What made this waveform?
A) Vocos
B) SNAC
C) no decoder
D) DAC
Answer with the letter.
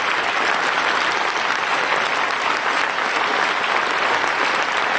C